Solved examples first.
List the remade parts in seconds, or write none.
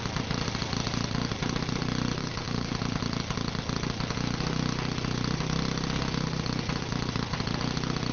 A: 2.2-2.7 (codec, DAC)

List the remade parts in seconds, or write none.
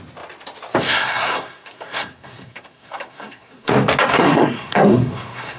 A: 0.8-3.7 (codec, SNAC); 4.2-5.6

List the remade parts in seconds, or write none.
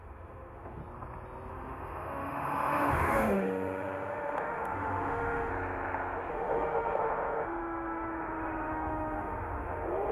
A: 0.0-0.8 (autoencoder, DAC-VAE); 1.5-5.5; 6.3-10.1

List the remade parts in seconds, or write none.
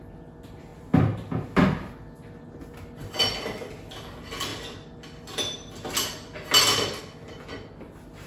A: none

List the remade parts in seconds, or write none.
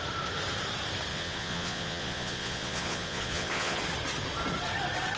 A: 1.1-3.8 (vocoder, Vocos)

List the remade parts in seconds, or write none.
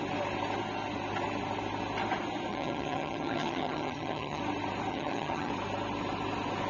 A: 2.5-4.4 (vocoder, HiFi-GAN); 4.9-5.5